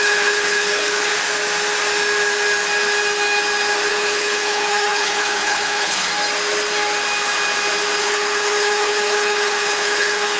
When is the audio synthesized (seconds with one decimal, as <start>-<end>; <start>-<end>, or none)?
0.0-1.1; 3.9-6.1; 8.0-10.4